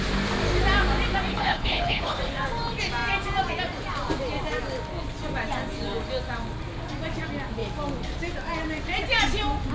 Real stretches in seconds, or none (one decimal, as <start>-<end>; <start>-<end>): 0.0-1.3; 2.2-9.7

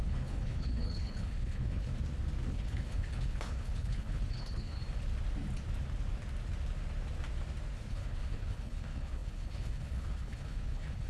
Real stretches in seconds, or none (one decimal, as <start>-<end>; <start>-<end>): 1.9-2.5; 4.8-7.9

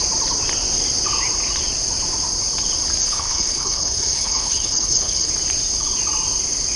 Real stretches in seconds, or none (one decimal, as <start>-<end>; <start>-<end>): 0.0-3.0; 5.3-6.8

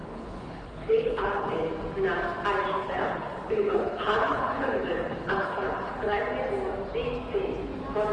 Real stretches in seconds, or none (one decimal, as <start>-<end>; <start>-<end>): 1.7-2.7; 6.2-8.1

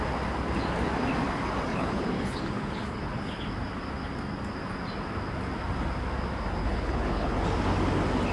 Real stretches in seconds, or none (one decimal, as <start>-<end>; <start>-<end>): 0.0-1.7; 3.4-6.6; 7.4-8.3